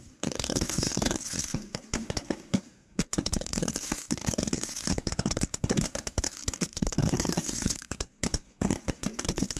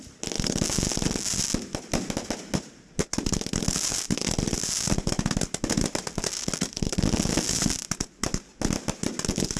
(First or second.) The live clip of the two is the second